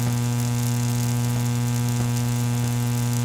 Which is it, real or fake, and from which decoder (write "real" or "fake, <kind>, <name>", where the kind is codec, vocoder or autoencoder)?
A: real